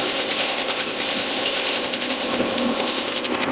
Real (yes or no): no